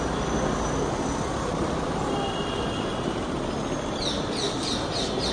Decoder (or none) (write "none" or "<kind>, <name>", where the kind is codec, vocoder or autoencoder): none